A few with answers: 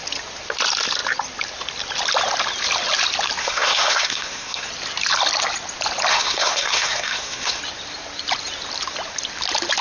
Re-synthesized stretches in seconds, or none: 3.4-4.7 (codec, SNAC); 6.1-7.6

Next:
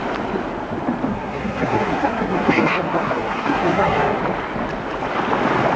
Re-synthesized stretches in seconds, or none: 1.1-4.2 (codec, SNAC)

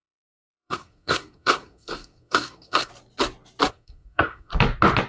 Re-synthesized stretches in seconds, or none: 0.0-2.9 (codec, SNAC); 3.7-4.5

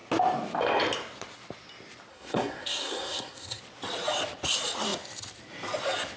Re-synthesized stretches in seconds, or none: 2.1-3.6 (codec, SNAC)

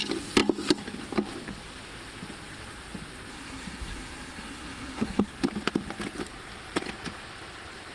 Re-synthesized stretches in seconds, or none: 3.3-5.3 (codec, SNAC)

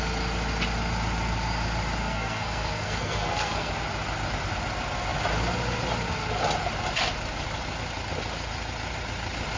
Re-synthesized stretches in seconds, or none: 2.0-3.7 (codec, SNAC)

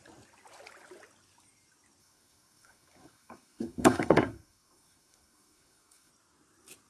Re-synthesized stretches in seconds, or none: 2.0-6.1 (codec, SNAC)